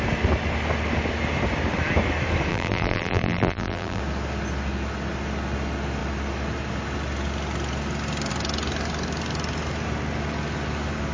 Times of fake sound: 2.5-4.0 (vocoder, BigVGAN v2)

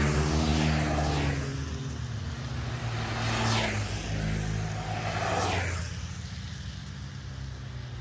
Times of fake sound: none